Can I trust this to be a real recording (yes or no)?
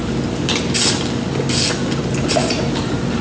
yes